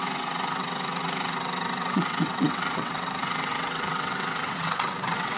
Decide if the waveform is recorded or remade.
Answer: remade